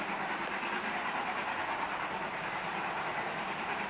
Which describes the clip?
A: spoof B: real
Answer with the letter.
B